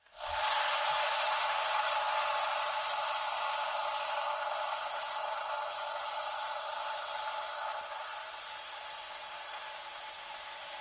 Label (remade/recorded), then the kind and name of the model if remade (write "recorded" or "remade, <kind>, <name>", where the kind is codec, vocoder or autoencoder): recorded